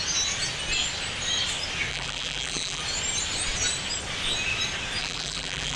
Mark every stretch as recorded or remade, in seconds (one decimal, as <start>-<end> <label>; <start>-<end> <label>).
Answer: 0.0-1.9 recorded; 1.9-2.8 remade; 2.8-5.0 recorded; 5.0-5.8 remade